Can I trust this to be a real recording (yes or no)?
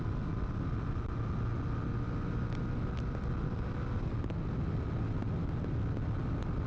yes